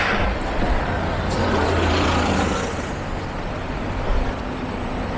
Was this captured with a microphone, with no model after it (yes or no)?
yes